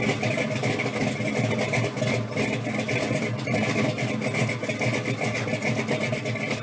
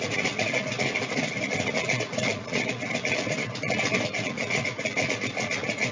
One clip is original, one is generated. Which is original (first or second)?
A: first